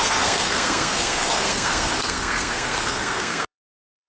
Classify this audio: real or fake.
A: fake